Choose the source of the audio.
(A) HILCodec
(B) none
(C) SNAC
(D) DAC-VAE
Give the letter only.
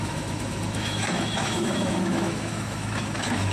D